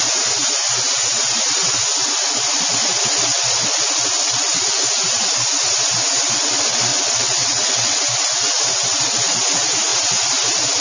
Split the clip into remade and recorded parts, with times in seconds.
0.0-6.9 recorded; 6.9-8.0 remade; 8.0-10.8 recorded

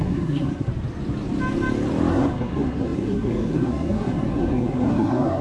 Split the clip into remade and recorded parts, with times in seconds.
0.0-0.7 remade; 0.7-2.1 recorded; 2.1-5.4 remade

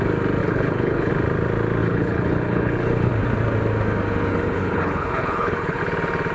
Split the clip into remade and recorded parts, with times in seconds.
0.0-0.4 recorded; 0.4-1.1 remade; 1.1-1.8 recorded; 1.8-3.1 remade; 3.1-4.3 recorded; 4.3-5.8 remade; 5.8-6.3 recorded

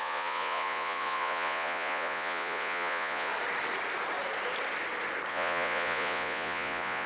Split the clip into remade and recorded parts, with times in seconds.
0.0-3.3 remade; 3.3-5.3 recorded; 5.3-7.1 remade

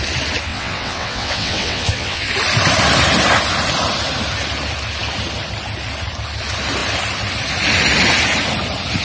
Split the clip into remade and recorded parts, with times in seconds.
0.0-0.5 recorded; 0.5-2.3 remade; 2.3-9.0 recorded